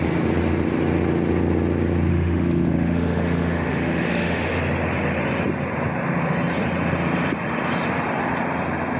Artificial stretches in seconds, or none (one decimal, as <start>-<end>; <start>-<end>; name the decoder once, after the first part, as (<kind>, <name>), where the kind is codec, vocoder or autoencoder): 2.1-4.6 (autoencoder, DAC-VAE)

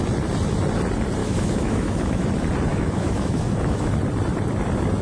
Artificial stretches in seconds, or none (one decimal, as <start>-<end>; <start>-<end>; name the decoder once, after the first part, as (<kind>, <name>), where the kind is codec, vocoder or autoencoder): 1.2-2.3 (autoencoder, DAC-VAE); 2.7-3.9

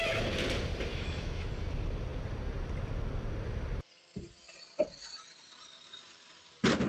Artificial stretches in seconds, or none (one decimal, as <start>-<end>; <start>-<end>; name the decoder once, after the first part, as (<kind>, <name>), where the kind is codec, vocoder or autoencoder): 0.9-1.5 (autoencoder, DAC-VAE)